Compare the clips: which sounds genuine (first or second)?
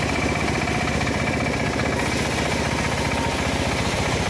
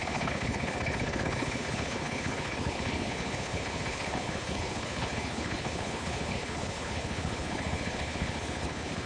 first